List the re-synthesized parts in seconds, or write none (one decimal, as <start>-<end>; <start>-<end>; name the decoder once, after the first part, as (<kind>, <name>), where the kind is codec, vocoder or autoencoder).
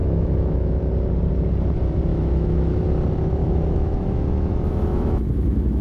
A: 0.0-0.8 (autoencoder, DAC-VAE); 2.1-2.8; 3.4-5.8